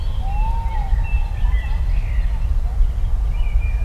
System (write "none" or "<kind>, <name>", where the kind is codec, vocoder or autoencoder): none